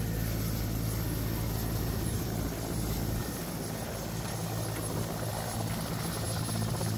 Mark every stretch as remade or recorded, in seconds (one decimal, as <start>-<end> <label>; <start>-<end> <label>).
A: 0.0-7.0 recorded